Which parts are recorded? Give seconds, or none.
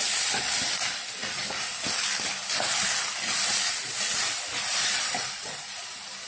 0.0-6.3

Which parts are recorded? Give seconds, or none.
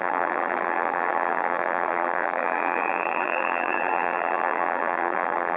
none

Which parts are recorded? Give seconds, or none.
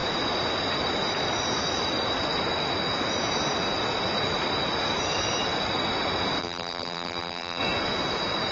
0.0-6.4; 7.6-8.5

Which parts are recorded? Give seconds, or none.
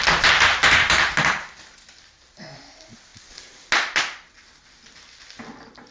0.0-5.9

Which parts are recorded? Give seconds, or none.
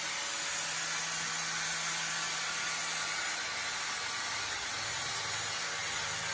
0.0-6.3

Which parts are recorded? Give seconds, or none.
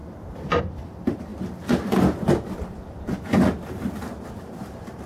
1.3-4.4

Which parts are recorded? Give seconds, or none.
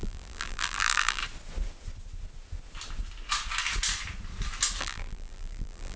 1.2-4.8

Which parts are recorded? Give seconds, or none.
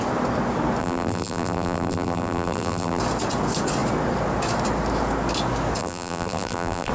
0.0-0.8; 3.0-5.8